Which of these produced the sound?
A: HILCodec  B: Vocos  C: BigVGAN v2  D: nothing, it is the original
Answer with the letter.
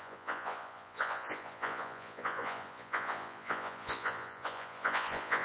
B